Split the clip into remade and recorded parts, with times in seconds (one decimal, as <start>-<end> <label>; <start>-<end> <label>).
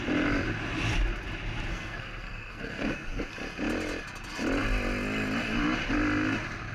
0.0-1.7 recorded; 1.7-3.3 remade; 3.3-6.7 recorded